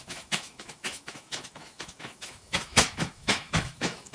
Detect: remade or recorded remade